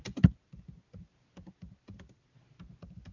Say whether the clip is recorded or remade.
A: recorded